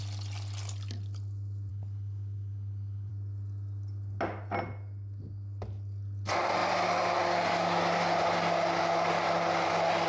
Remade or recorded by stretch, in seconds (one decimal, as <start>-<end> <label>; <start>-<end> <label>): 0.0-1.7 recorded; 1.7-3.1 remade; 3.1-10.1 recorded